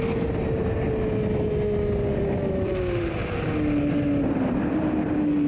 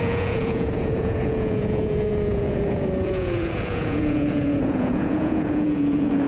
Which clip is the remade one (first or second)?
second